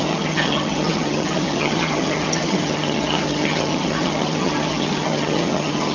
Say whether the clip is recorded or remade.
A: remade